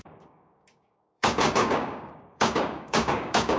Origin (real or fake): fake